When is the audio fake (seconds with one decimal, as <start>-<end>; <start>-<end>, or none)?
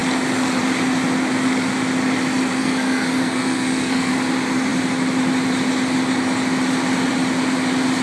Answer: 2.6-4.1